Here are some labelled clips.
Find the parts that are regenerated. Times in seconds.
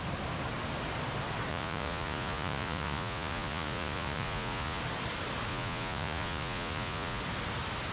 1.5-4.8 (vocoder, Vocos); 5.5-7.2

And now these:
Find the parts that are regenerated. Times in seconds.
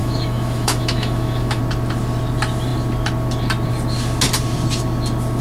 0.0-1.6 (autoencoder, DAC-VAE)